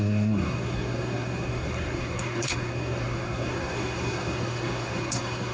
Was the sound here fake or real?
fake